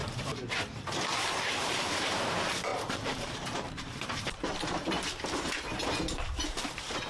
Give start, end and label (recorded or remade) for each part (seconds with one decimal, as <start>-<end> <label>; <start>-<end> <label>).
0.0-7.1 remade